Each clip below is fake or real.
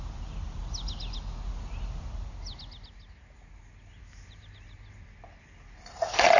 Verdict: real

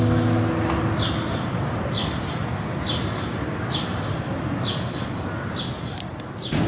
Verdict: real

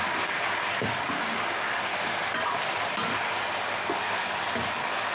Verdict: real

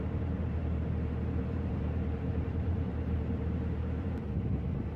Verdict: fake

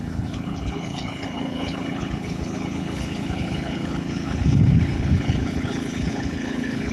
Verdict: fake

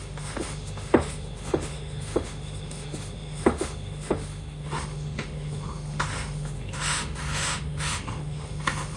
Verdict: fake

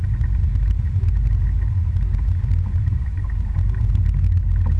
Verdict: real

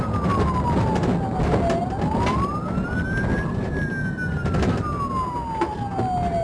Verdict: real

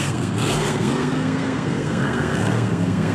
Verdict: fake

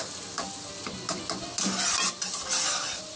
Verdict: real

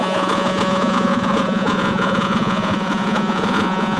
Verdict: fake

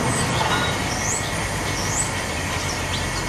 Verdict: real